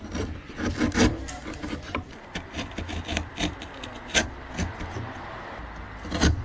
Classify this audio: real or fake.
real